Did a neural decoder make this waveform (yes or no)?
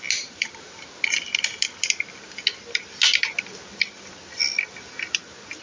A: no